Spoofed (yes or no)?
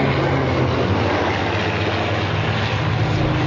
no